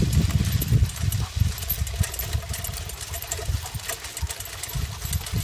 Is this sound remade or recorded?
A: recorded